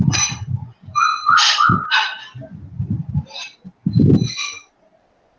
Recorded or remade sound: recorded